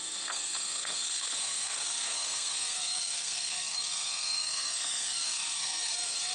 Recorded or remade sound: remade